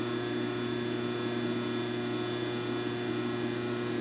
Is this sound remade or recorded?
recorded